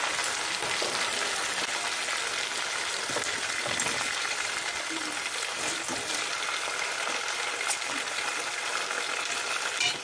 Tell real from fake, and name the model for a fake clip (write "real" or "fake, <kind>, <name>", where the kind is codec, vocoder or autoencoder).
real